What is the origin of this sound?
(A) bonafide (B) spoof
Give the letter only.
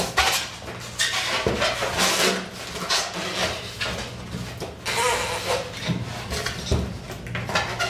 A